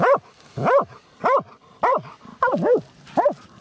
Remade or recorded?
recorded